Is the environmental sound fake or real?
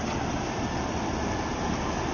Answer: real